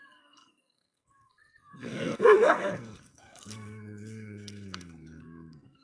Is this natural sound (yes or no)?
no